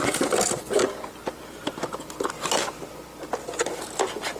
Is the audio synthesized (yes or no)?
no